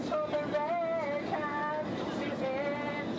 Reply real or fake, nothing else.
real